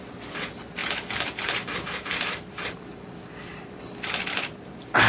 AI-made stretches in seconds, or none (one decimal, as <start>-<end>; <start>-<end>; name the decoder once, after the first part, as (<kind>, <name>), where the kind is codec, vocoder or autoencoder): 0.8-3.8 (vocoder, BigVGAN v2)